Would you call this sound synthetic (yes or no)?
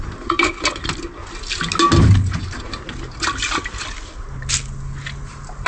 no